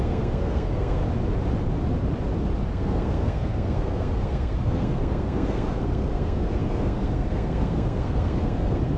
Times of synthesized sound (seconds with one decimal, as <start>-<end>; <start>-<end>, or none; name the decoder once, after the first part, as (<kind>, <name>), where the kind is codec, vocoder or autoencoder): 0.0-1.0 (codec, SNAC); 2.7-9.0